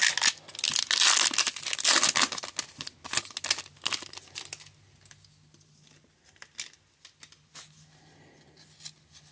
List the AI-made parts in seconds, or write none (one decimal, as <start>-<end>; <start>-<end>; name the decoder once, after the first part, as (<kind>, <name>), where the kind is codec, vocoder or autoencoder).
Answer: none